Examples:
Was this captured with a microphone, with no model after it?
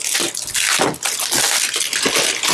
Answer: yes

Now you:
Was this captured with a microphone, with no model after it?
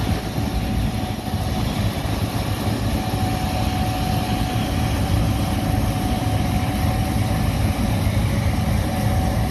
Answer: yes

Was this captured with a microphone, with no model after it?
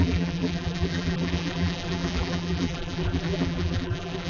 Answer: no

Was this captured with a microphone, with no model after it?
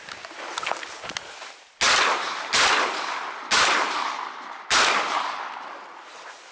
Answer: yes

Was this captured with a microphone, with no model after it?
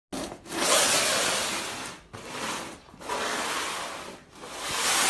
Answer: yes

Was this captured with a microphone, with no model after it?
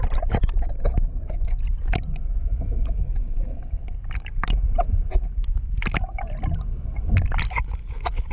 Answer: yes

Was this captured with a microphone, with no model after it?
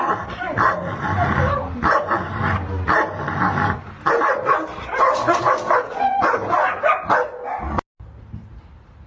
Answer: yes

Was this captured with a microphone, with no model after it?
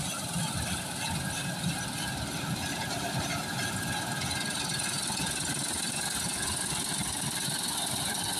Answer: yes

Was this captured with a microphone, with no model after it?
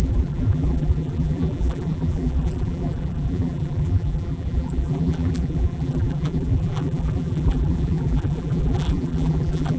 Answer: no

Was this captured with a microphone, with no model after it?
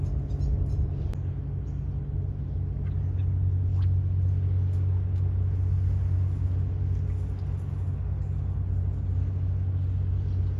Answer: yes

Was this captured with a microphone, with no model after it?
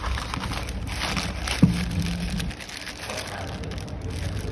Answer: yes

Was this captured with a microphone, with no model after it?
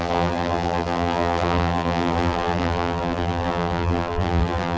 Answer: no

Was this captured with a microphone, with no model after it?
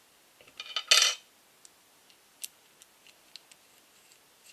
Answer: yes